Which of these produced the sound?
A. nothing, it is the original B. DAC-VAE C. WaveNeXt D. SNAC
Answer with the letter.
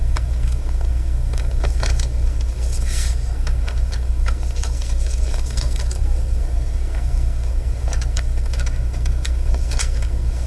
D